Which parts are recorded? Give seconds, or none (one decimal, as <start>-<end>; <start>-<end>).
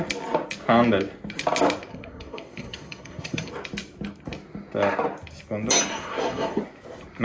0.0-1.9; 3.5-5.9; 6.6-7.2